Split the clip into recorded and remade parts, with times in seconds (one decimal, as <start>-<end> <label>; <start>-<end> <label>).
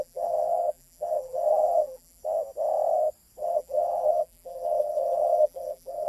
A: 0.0-2.2 remade; 2.2-3.4 recorded; 3.4-6.1 remade